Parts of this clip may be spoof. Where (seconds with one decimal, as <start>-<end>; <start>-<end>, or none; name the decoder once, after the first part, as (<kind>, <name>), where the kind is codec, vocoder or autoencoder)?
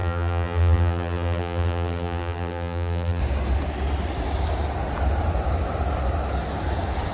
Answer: 0.0-3.2 (vocoder, BigVGAN v2)